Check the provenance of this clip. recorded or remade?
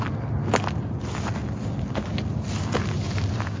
recorded